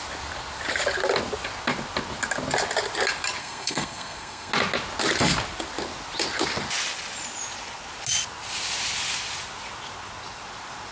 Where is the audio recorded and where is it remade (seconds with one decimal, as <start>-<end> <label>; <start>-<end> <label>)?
0.0-3.4 recorded; 3.4-4.5 remade; 4.5-10.9 recorded